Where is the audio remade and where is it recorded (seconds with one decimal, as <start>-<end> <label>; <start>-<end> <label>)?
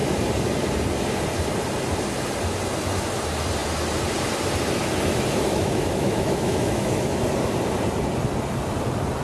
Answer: 0.0-5.5 recorded; 5.5-7.2 remade; 7.2-9.2 recorded